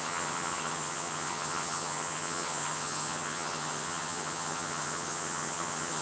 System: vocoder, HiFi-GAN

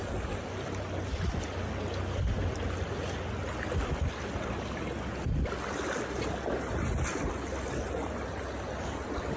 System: none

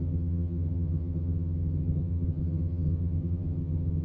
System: vocoder, HiFi-GAN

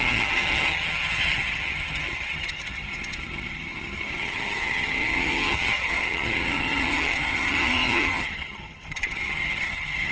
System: vocoder, HiFi-GAN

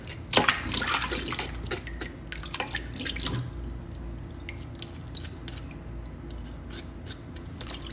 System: none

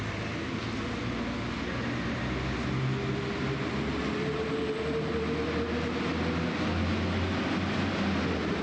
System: none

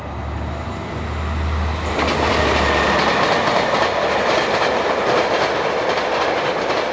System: none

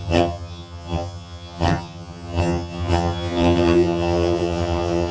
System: vocoder, HiFi-GAN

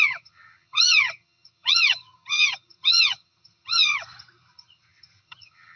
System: vocoder, HiFi-GAN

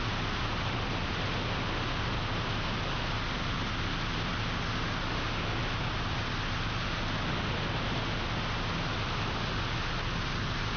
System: none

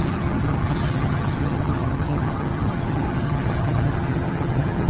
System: vocoder, HiFi-GAN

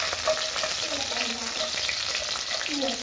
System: none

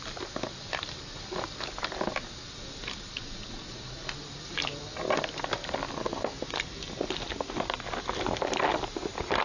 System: none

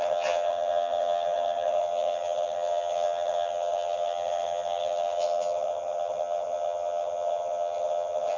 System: vocoder, HiFi-GAN